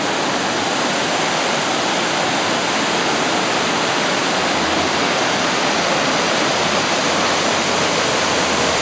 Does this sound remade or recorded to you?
recorded